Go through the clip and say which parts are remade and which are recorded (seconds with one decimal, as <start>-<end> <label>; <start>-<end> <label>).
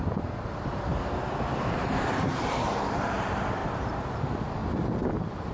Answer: 0.0-0.9 remade; 0.9-1.6 recorded; 1.6-5.5 remade